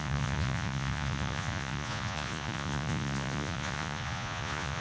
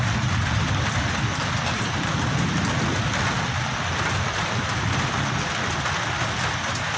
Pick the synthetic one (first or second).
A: first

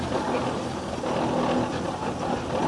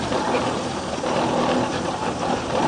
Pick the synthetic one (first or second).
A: second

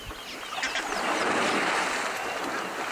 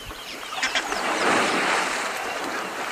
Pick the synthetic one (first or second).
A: second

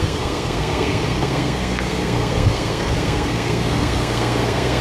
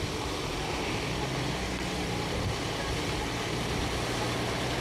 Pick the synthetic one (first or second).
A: first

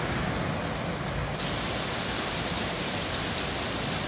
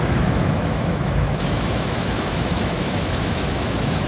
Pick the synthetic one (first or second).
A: second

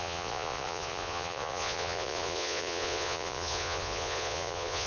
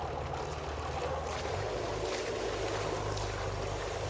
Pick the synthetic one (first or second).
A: first